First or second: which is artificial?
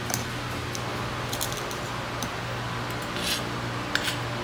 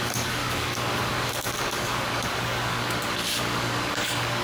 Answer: second